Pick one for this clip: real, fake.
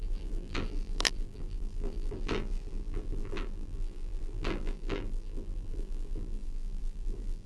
fake